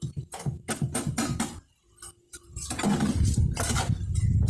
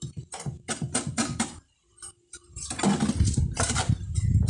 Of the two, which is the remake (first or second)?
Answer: second